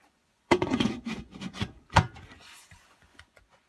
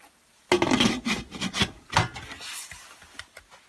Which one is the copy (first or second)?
first